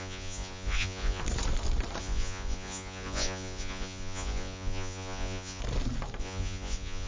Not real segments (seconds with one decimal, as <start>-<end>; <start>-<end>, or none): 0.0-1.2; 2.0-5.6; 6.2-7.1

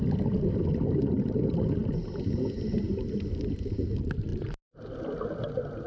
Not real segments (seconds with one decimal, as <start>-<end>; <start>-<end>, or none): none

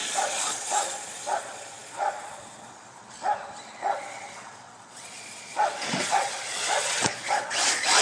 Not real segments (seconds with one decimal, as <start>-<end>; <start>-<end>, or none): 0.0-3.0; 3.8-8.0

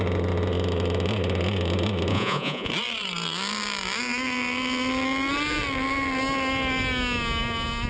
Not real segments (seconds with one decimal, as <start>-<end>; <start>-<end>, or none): 2.1-2.7

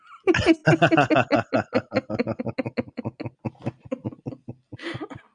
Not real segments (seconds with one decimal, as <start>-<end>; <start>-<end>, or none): none